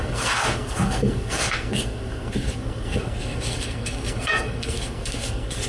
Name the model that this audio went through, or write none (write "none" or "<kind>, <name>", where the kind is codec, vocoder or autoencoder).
codec, SNAC